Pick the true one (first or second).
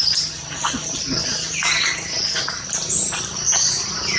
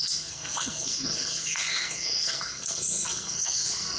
first